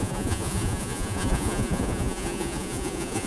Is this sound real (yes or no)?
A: no